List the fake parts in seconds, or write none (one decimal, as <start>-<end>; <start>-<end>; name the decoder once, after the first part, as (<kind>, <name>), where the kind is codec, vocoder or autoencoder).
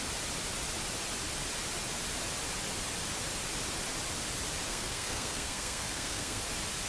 4.7-6.4 (codec, SNAC)